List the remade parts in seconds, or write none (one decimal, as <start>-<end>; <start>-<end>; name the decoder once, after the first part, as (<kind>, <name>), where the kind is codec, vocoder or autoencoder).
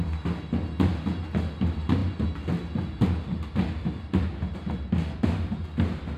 none